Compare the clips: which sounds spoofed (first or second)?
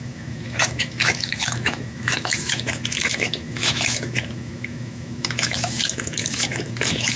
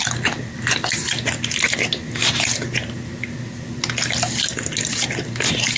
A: first